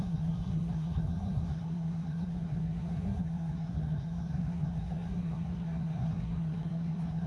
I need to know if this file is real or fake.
fake